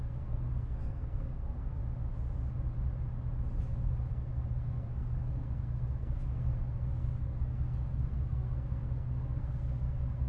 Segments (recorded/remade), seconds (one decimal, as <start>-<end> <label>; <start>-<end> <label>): 0.0-1.8 remade; 1.8-4.1 recorded; 4.1-10.3 remade